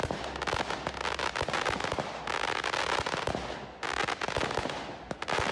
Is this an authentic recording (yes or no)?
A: yes